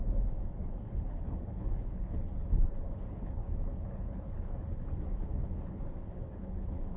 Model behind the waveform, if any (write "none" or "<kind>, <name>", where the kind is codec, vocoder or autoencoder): codec, HILCodec